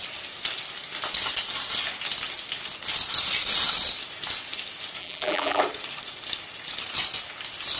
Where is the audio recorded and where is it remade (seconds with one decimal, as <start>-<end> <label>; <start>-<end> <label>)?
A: 0.0-5.0 recorded; 5.0-5.6 remade; 5.6-7.8 recorded